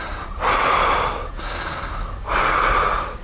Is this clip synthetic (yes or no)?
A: no